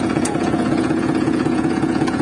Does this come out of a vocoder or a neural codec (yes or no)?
yes